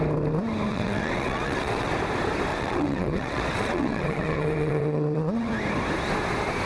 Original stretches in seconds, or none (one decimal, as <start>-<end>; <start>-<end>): 0.0-0.7; 1.9-2.5; 5.5-6.7